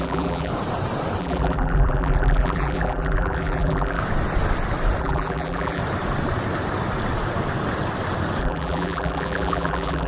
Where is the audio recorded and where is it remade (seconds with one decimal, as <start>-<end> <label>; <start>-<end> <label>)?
0.0-0.5 remade; 0.5-1.2 recorded; 1.2-4.0 remade; 4.0-5.0 recorded; 5.0-5.8 remade; 5.8-8.4 recorded; 8.4-10.1 remade